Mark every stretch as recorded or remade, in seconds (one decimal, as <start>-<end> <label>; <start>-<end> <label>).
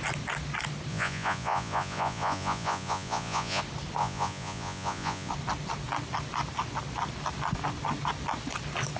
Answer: 0.0-0.9 recorded; 0.9-3.6 remade; 3.6-4.0 recorded; 4.0-5.3 remade; 5.3-9.0 recorded